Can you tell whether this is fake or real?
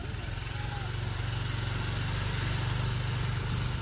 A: real